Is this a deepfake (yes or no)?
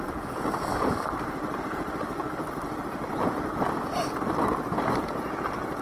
yes